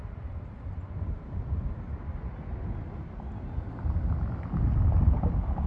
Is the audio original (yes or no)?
yes